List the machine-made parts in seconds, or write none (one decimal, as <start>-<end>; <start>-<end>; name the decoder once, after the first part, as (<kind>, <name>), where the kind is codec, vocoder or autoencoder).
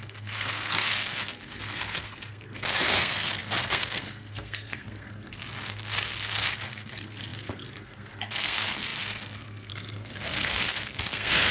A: 0.0-11.5 (codec, SNAC)